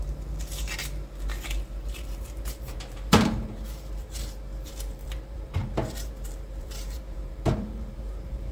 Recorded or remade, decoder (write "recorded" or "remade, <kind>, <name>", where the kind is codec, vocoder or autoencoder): remade, vocoder, BigVGAN v2